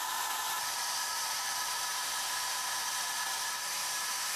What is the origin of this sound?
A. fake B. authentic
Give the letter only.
A